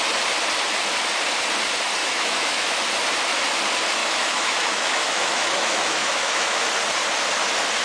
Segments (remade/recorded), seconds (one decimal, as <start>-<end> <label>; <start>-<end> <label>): 0.0-2.0 recorded; 2.0-2.8 remade; 2.8-4.0 recorded; 4.0-6.6 remade; 6.6-7.8 recorded